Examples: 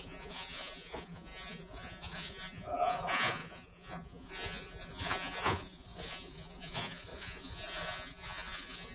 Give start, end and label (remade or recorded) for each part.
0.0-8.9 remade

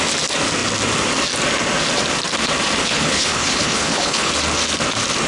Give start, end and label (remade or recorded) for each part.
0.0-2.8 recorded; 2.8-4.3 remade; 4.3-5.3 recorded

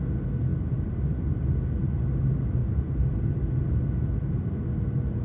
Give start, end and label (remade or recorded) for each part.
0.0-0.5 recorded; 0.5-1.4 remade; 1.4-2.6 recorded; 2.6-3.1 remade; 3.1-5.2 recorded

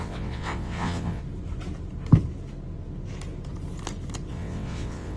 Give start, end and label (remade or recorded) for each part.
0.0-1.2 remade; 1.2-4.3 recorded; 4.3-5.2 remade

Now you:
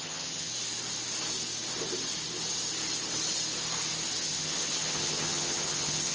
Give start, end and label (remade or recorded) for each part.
0.0-0.5 remade; 0.5-4.2 recorded; 4.2-6.1 remade